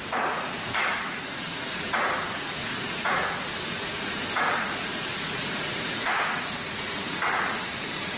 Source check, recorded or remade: remade